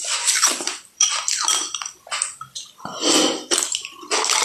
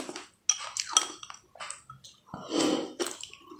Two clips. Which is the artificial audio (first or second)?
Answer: first